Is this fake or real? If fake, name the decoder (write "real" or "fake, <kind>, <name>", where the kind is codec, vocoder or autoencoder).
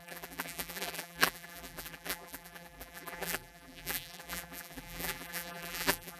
fake, vocoder, BigVGAN v2